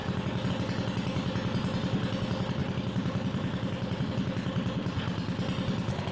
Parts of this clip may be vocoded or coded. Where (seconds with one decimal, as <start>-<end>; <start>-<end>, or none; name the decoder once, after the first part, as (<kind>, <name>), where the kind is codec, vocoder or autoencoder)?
0.0-0.5 (vocoder, BigVGAN v2); 2.6-4.1